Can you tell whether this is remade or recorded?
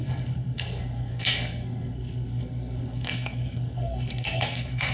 remade